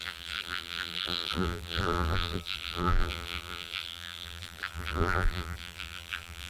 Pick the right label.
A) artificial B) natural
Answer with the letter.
A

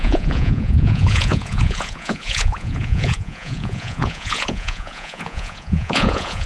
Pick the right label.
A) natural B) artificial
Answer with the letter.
B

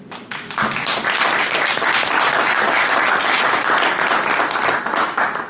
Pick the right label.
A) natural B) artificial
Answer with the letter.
A